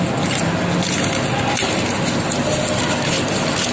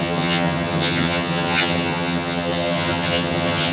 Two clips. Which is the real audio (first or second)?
first